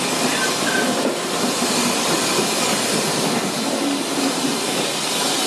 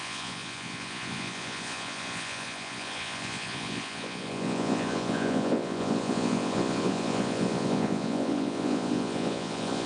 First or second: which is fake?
second